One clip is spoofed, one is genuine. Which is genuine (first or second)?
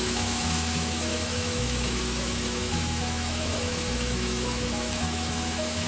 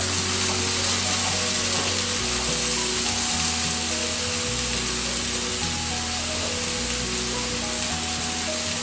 second